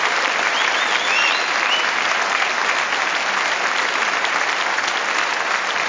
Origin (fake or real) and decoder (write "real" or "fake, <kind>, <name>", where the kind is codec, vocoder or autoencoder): real